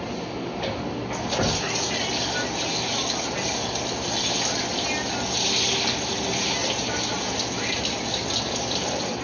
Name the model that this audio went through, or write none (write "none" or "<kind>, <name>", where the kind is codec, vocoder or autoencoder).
none